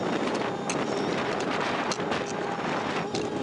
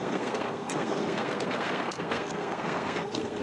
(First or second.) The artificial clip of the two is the second